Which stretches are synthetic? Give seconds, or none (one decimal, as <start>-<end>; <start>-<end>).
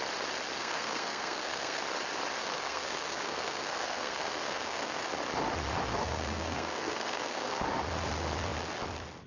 0.6-1.8; 2.4-5.1; 5.9-7.6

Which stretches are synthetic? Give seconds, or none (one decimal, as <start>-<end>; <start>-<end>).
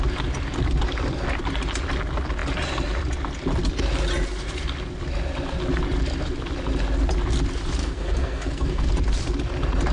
7.8-8.9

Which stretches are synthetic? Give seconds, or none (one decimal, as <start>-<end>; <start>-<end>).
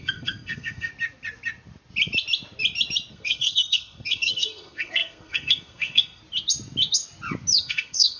0.0-0.9; 3.1-6.2; 7.6-8.2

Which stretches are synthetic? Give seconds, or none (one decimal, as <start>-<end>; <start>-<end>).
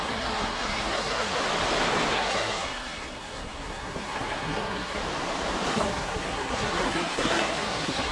0.0-1.4; 2.1-5.0; 5.7-8.1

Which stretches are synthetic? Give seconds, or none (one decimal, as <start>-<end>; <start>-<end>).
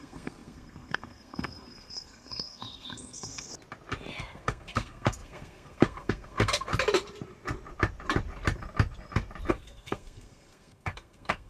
0.0-3.5; 4.2-6.7; 9.5-11.5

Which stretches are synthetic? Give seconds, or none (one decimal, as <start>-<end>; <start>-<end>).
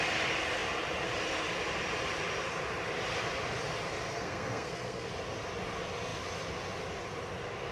4.1-5.1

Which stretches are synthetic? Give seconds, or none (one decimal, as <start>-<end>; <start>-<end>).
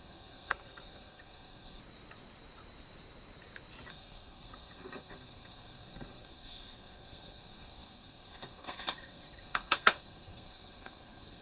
0.0-1.8; 3.9-11.4